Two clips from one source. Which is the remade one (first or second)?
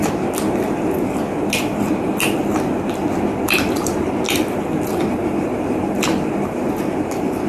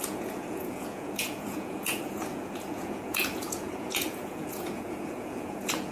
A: second